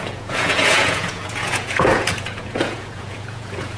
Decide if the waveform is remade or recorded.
remade